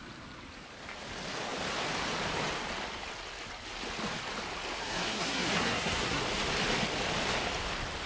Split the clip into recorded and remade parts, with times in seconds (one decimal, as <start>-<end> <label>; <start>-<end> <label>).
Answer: 0.0-4.8 recorded; 4.8-6.2 remade; 6.2-8.1 recorded